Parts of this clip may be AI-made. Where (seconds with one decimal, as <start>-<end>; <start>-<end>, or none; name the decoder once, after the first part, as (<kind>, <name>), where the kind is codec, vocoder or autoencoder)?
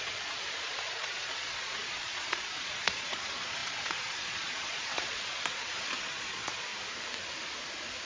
0.0-6.7 (vocoder, Vocos)